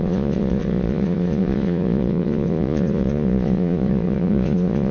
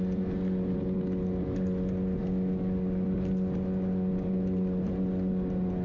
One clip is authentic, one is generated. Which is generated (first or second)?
first